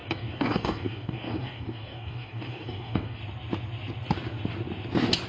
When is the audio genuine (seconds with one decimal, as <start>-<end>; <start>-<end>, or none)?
3.2-5.3